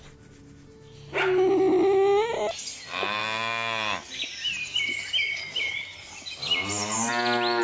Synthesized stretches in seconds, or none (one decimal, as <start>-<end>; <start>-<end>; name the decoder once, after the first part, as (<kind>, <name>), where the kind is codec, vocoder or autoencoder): none